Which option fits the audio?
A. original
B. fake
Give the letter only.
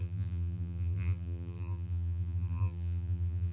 B